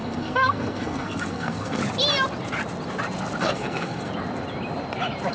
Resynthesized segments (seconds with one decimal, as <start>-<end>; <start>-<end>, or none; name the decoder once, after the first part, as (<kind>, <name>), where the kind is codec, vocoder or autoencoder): 0.0-1.8 (codec, SNAC); 3.4-4.1